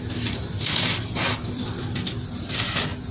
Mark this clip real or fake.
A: real